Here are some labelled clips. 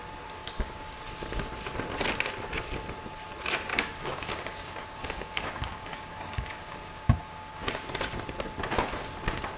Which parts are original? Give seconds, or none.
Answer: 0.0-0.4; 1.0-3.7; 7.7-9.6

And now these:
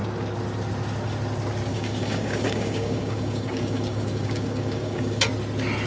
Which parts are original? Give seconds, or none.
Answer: 0.0-1.7; 5.2-5.9

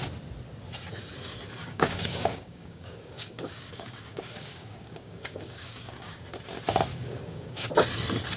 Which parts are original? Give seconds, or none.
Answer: 0.0-1.6; 6.2-6.9; 7.7-8.4

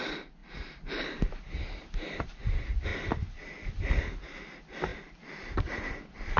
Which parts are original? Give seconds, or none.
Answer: 0.0-6.4

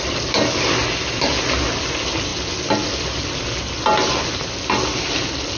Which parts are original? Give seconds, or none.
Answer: 0.0-5.6

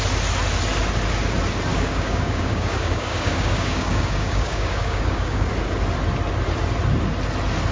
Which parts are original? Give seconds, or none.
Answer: 0.0-1.7; 5.5-7.7

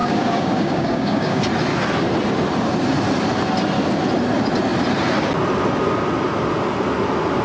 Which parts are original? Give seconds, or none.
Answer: 1.4-7.4